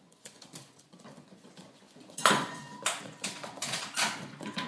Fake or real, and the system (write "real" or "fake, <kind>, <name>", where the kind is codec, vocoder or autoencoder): fake, vocoder, Vocos